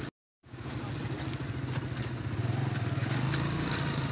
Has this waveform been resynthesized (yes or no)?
no